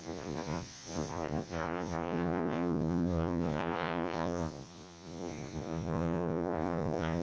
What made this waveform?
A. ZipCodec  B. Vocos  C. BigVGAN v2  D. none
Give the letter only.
B